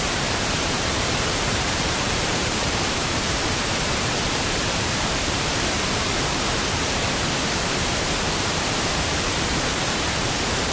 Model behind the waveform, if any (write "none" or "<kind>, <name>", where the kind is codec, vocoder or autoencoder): vocoder, BigVGAN v2